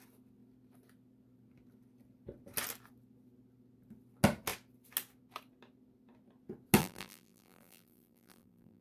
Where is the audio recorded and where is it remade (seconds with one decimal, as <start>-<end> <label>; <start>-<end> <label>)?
0.0-6.8 recorded; 6.8-8.8 remade